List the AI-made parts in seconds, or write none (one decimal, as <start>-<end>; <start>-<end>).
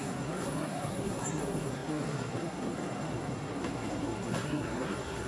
0.0-5.3